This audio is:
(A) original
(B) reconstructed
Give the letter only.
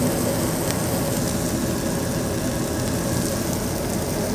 A